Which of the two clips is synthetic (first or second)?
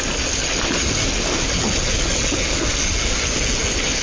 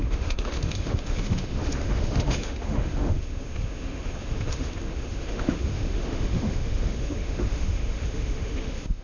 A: second